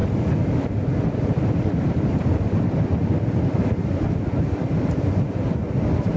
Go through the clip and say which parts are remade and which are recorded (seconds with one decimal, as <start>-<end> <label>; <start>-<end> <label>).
0.0-6.2 recorded